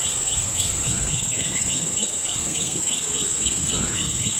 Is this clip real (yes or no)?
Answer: no